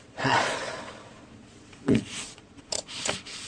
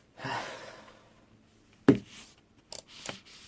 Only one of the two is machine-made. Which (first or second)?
first